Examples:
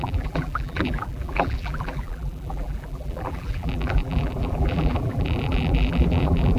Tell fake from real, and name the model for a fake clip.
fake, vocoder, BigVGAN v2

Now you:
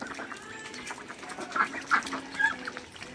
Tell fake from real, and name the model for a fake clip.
real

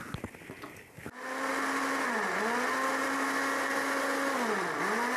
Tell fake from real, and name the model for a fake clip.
real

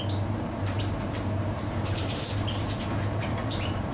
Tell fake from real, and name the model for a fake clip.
fake, vocoder, BigVGAN v2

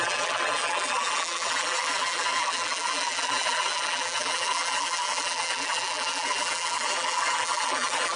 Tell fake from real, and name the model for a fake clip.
fake, vocoder, BigVGAN v2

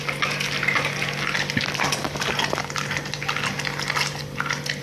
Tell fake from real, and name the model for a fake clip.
real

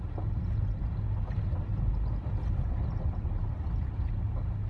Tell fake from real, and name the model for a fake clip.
real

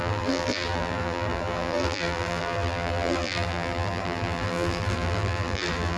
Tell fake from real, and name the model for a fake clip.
fake, vocoder, BigVGAN v2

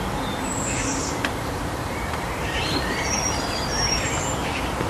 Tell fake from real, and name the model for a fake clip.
fake, vocoder, BigVGAN v2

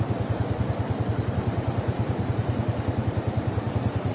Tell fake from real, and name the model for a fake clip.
fake, vocoder, BigVGAN v2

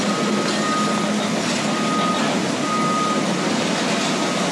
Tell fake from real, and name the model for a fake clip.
real